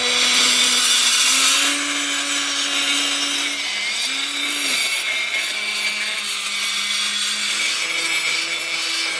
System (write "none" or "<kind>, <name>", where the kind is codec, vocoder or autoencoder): none